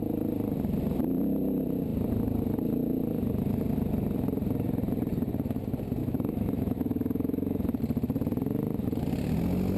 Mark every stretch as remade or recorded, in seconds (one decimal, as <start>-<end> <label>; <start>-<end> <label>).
0.0-6.0 recorded; 6.0-7.8 remade; 7.8-9.8 recorded